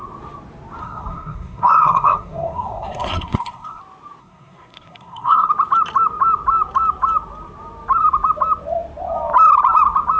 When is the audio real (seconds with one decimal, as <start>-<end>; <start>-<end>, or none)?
0.0-0.8; 3.8-4.2; 5.5-10.2